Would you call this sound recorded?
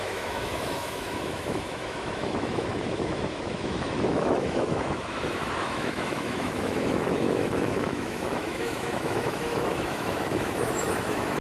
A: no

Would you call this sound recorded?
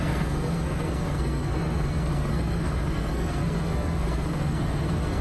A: no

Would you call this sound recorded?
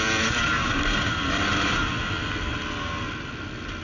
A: yes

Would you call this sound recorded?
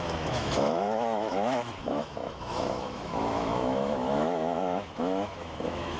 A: no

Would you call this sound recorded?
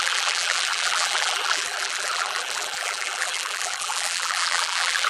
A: no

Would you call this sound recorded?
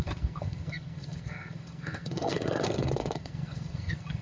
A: no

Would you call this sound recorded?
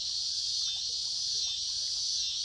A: yes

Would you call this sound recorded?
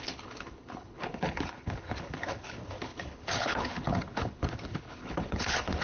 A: no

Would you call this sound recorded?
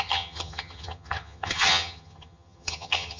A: no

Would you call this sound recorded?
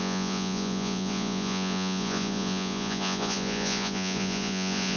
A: no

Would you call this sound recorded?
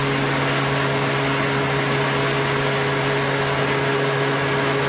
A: yes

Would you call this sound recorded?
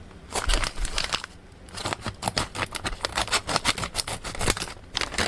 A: yes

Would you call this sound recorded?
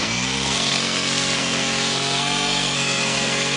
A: no